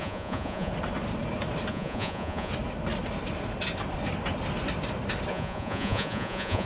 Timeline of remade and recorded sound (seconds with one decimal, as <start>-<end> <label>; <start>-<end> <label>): 0.0-0.7 remade; 0.7-1.7 recorded; 1.7-2.5 remade; 2.5-5.3 recorded; 5.3-6.6 remade